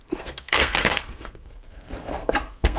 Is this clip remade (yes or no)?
yes